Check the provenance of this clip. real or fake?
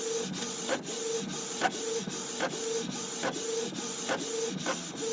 real